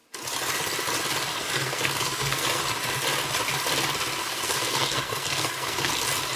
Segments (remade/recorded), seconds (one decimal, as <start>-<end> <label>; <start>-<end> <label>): 0.0-1.3 recorded; 1.3-2.6 remade; 2.6-4.2 recorded; 4.2-5.9 remade; 5.9-6.4 recorded